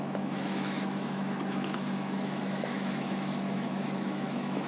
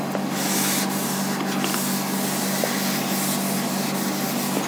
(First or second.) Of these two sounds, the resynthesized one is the first